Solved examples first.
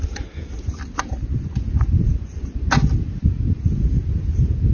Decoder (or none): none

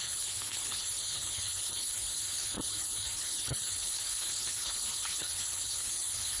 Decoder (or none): codec, HILCodec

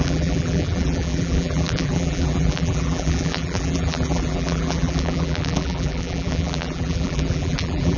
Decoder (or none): vocoder, BigVGAN v2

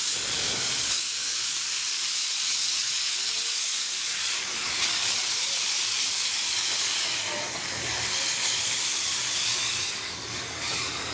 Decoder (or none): codec, DAC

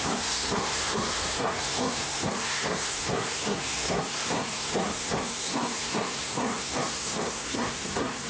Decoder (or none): codec, SNAC